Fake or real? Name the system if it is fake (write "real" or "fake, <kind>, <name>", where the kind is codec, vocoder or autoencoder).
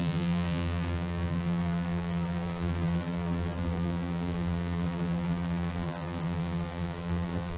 fake, vocoder, BigVGAN v2